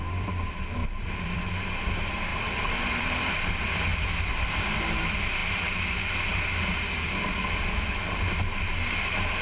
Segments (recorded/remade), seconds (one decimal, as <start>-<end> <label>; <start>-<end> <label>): 0.0-0.8 recorded; 0.8-1.5 remade; 1.5-2.3 recorded; 2.3-3.3 remade; 3.3-9.4 recorded

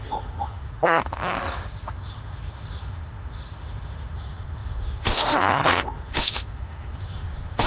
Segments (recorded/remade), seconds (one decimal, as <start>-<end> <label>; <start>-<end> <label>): 0.0-7.7 remade